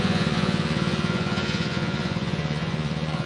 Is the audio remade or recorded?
remade